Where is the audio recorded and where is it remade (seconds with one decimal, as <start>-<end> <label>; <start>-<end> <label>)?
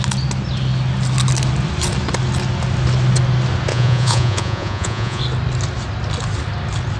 0.0-3.7 recorded; 3.7-5.2 remade; 5.2-7.0 recorded